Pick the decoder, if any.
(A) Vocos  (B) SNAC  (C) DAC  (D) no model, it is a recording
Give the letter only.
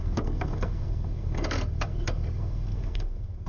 B